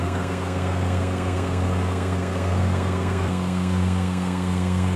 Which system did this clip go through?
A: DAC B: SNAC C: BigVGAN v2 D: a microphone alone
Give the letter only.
B